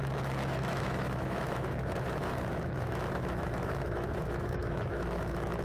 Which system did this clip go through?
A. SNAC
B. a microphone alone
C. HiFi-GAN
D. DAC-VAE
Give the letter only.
D